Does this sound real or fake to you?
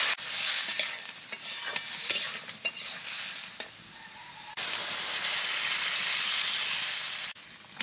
real